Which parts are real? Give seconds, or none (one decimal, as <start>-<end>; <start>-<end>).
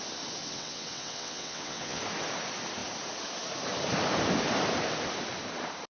0.0-0.4; 2.0-5.9